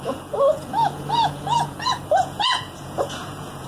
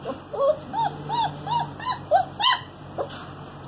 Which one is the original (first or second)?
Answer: second